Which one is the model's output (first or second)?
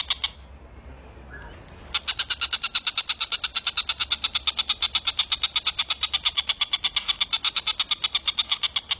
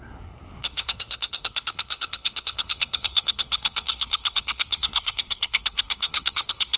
second